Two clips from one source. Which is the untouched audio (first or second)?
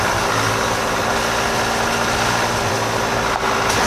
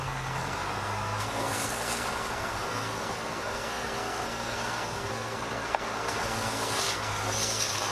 first